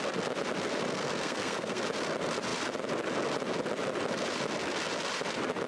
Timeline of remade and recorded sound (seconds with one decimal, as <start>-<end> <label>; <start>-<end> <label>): 0.0-1.0 recorded; 1.0-1.8 remade; 1.8-5.7 recorded